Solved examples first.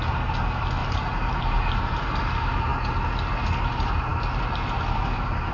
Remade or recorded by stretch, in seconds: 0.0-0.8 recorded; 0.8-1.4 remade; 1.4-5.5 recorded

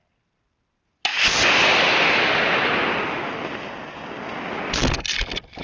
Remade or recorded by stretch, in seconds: 0.0-5.6 recorded

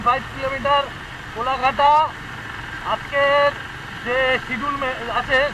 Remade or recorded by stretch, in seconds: 0.0-1.6 recorded; 1.6-2.4 remade; 2.4-5.5 recorded

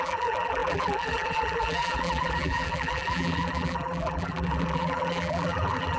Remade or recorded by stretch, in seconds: 0.0-6.0 remade